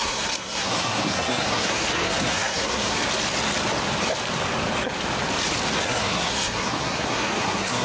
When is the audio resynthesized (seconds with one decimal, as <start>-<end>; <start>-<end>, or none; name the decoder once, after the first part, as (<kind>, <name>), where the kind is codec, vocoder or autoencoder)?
0.0-3.0 (codec, SNAC); 5.8-7.8